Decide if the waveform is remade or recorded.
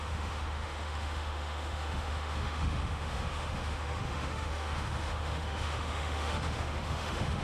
remade